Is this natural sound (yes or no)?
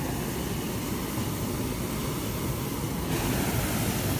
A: yes